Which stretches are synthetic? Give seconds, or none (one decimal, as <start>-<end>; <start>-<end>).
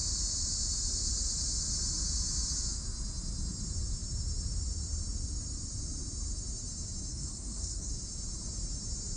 7.1-7.9